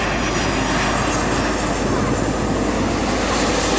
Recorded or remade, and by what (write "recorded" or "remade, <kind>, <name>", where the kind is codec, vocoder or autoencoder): recorded